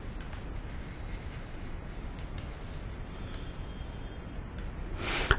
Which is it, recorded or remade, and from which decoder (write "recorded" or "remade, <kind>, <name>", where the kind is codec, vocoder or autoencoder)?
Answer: recorded